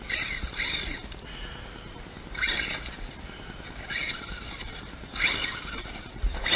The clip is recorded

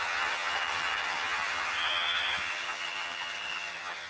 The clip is remade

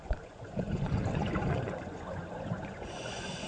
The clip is remade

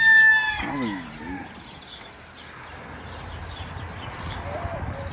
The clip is recorded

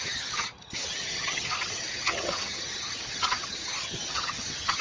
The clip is remade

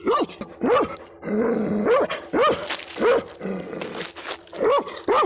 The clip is recorded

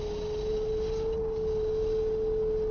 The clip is recorded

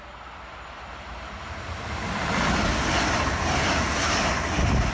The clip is recorded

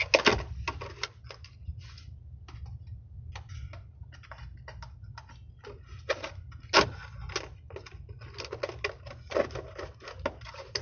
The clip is recorded